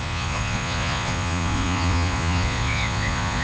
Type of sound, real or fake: fake